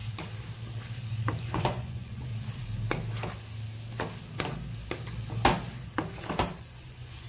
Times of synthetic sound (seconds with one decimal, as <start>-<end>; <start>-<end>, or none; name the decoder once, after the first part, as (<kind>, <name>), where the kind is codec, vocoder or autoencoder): 1.4-2.3 (vocoder, Vocos); 6.6-7.3